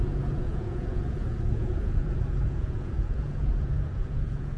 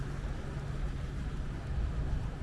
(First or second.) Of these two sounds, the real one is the second